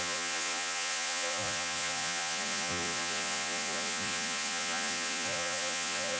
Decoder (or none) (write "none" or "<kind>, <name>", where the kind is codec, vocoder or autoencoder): vocoder, Vocos